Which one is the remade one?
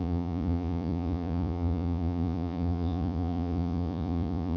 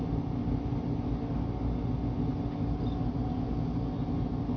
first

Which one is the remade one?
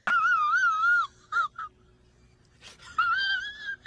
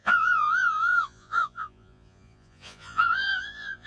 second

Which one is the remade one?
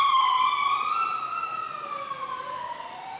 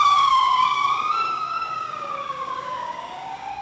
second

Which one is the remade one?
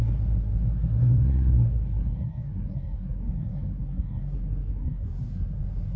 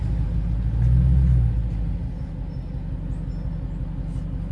first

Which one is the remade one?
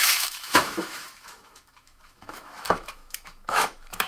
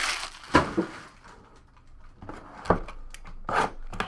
first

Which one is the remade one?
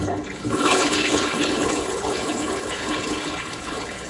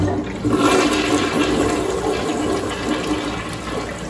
first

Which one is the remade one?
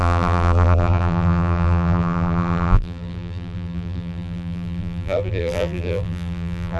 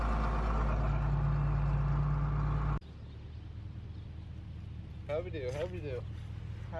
first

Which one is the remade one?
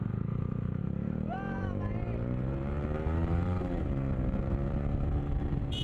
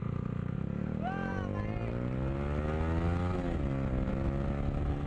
first